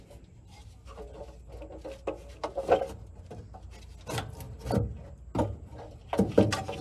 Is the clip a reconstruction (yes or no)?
no